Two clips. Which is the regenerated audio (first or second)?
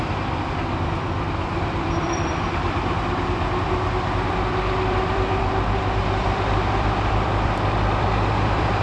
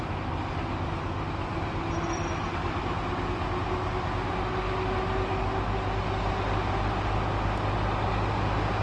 first